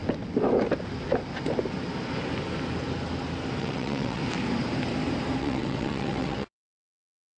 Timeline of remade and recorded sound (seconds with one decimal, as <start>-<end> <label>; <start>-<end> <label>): 0.0-3.6 recorded; 3.6-4.2 remade; 4.2-5.4 recorded; 5.4-7.4 remade